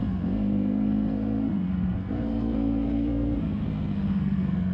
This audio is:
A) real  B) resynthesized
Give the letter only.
B